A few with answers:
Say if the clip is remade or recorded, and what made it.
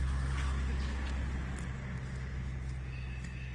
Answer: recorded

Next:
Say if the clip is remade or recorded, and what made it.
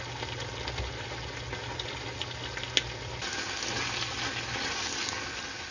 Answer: recorded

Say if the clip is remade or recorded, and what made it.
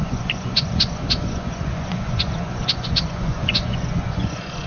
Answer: remade, vocoder, Vocos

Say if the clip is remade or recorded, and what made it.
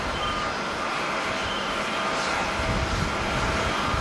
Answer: recorded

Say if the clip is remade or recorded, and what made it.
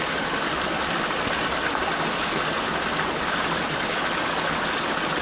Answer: recorded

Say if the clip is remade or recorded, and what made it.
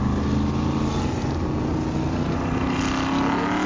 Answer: recorded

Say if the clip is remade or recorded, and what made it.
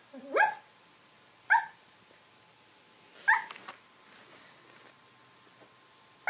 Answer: recorded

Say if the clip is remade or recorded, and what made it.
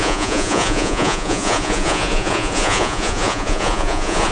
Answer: remade, vocoder, Vocos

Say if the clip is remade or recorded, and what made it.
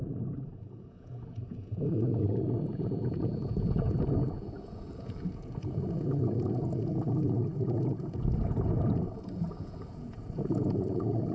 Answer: remade, vocoder, Vocos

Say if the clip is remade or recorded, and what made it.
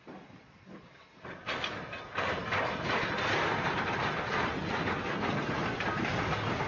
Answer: recorded